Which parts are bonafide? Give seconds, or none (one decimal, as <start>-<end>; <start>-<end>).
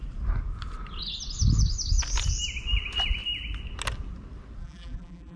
0.0-4.6